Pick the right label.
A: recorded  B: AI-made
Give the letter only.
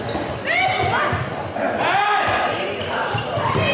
A